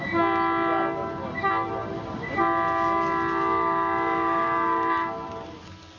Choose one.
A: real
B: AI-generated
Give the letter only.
A